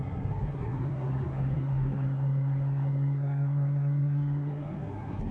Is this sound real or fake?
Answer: fake